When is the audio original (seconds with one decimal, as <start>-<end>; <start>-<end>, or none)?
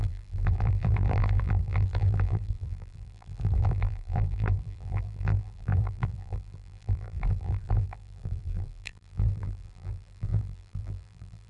none